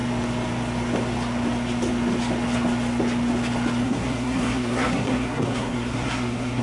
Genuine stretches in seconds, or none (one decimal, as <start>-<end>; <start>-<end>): 0.0-3.8